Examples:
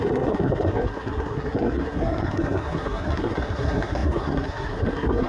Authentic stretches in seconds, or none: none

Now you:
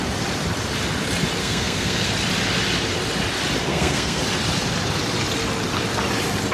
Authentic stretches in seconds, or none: 0.0-1.4; 2.1-3.7; 4.2-6.5

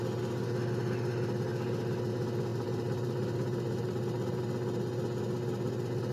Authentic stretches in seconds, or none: 0.0-2.5; 4.4-6.1

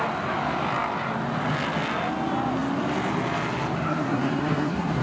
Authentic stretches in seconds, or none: 0.0-3.9

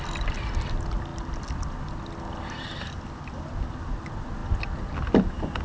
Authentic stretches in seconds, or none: 0.0-5.6